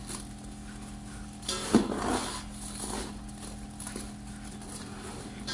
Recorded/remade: recorded